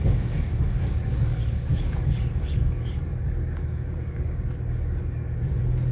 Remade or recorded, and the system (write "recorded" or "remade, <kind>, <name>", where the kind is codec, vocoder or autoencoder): remade, codec, DAC